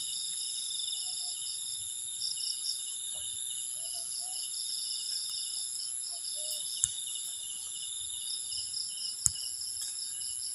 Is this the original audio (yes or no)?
yes